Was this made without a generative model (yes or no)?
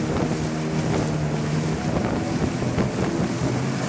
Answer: yes